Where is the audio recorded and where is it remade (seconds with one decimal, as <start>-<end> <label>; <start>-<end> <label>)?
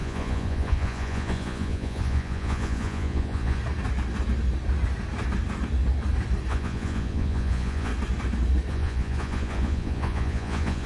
0.0-3.6 remade; 3.6-6.5 recorded; 6.5-7.9 remade; 7.9-8.7 recorded; 8.7-10.9 remade